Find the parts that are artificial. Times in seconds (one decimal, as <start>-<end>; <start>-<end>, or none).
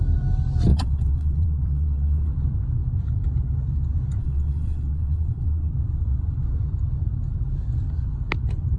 0.7-2.3; 4.2-5.7